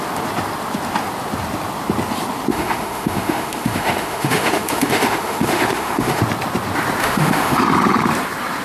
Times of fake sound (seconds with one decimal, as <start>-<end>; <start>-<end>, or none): 2.5-6.2; 7.0-7.6